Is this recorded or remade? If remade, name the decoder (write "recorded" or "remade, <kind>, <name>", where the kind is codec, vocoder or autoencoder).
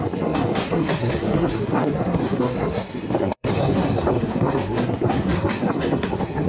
remade, codec, SNAC